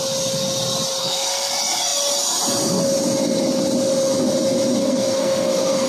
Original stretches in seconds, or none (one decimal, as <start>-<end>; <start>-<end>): 0.0-1.0; 1.5-4.8

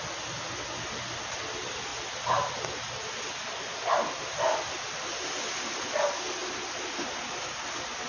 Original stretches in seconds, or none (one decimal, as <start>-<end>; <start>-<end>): 0.0-8.1

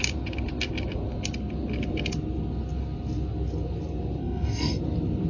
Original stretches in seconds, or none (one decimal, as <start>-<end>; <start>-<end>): 0.0-4.2; 4.8-5.3

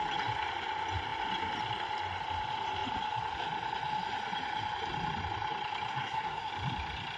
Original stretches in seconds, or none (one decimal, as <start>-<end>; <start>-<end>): 0.0-5.9; 6.5-7.2

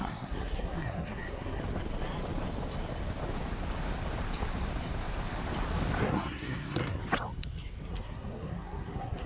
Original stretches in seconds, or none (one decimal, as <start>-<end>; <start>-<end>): 1.6-6.0; 7.0-7.9

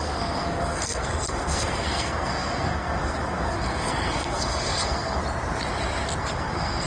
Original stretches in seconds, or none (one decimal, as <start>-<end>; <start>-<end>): 5.2-6.2